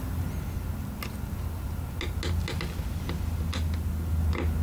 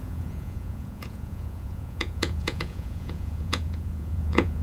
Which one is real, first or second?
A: first